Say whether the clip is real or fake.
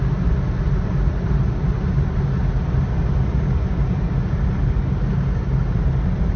real